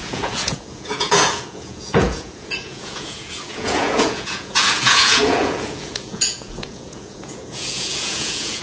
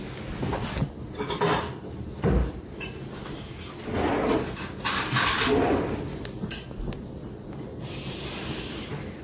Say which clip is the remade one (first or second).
first